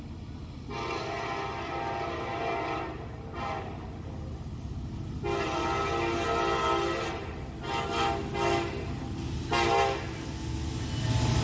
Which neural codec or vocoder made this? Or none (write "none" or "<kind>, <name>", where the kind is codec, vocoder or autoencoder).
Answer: none